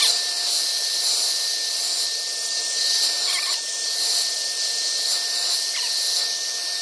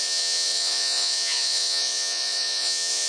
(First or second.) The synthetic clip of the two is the second